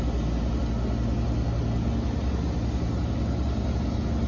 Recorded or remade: recorded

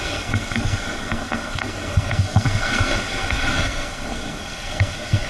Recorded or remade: remade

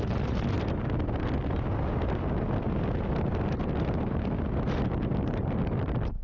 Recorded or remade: recorded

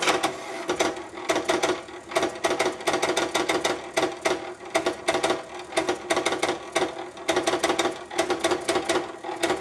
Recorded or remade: recorded